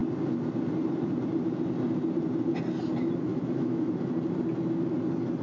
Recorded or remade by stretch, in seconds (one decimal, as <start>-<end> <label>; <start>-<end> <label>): 0.0-3.3 recorded; 3.3-4.0 remade; 4.0-5.4 recorded